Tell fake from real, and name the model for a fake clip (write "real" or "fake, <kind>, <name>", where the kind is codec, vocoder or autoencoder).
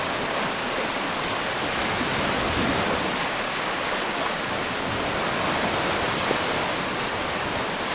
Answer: real